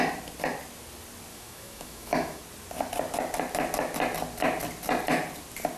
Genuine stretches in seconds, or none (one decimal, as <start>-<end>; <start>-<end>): 0.0-1.3; 2.4-5.8